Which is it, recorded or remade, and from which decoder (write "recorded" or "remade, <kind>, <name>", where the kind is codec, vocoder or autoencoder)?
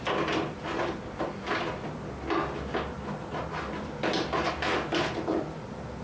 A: recorded